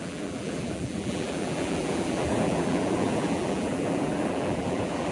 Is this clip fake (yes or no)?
yes